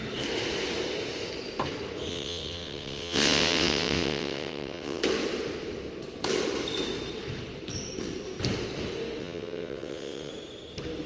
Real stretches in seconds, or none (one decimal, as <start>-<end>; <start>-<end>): 0.0-2.1; 5.0-9.2; 10.3-11.1